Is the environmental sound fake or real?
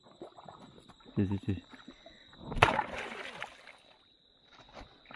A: real